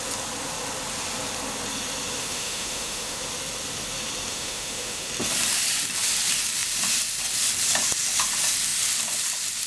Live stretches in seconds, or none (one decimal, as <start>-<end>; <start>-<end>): 0.0-2.2; 3.2-4.3; 5.1-9.7